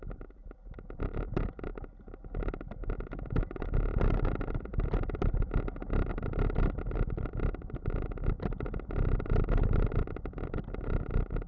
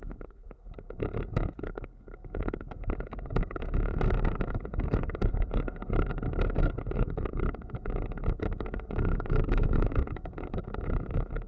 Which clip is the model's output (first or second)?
second